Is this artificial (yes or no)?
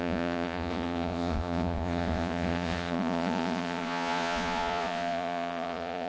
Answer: yes